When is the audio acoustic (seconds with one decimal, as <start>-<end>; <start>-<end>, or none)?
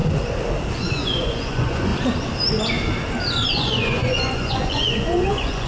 0.0-0.7; 1.9-3.5